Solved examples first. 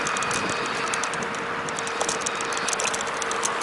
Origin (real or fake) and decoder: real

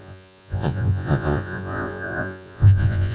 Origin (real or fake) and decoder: fake, vocoder, Vocos